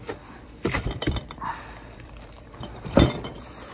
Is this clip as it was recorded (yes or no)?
no